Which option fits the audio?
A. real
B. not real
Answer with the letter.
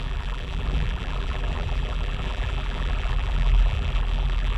B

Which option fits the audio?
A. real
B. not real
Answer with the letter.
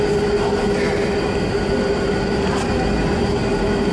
A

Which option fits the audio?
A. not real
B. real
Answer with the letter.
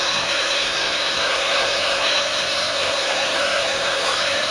A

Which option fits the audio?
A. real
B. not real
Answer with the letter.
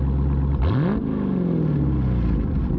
A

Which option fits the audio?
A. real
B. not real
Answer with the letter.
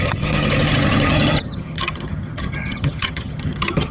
B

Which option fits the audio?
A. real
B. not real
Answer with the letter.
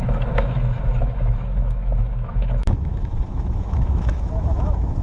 B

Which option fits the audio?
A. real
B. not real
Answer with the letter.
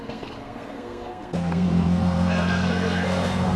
B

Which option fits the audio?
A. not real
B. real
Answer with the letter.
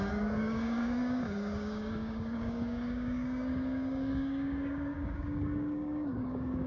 A